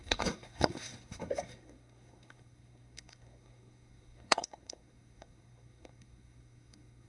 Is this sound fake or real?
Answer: fake